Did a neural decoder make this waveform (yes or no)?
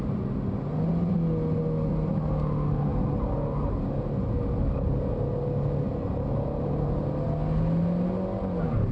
no